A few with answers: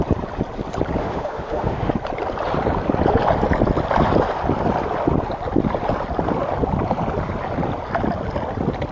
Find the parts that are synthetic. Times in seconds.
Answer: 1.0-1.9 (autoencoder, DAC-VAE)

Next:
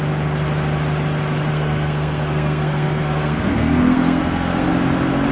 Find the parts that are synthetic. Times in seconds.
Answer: 1.5-4.7 (codec, SNAC)

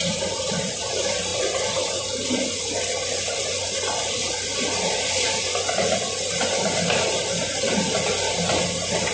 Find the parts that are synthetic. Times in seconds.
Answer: none

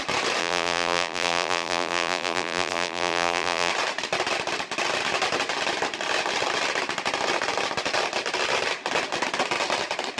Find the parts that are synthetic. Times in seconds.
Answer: 0.4-3.7 (vocoder, BigVGAN v2)

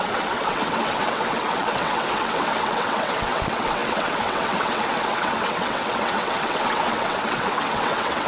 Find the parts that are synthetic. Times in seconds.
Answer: 0.0-8.3 (vocoder, WaveNeXt)